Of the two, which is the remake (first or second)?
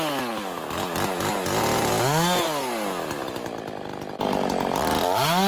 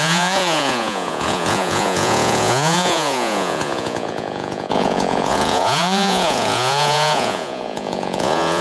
second